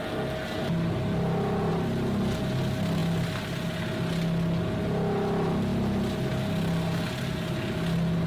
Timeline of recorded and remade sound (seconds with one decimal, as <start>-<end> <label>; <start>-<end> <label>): 0.0-8.3 recorded